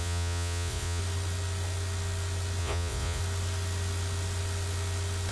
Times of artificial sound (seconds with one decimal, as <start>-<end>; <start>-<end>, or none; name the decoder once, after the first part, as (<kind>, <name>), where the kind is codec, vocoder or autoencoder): 0.0-1.0 (vocoder, Vocos); 2.6-3.2

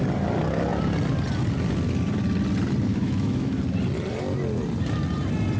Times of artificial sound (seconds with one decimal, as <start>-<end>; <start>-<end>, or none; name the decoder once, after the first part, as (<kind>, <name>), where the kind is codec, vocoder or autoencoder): 2.9-3.6 (autoencoder, DAC-VAE)

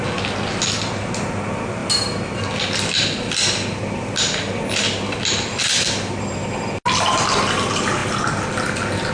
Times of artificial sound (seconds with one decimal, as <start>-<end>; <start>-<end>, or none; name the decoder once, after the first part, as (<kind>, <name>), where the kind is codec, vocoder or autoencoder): none